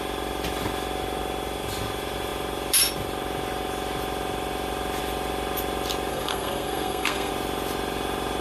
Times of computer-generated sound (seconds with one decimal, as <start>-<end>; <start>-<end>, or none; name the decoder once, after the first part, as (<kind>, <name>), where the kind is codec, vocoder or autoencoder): 6.1-7.3 (codec, SNAC)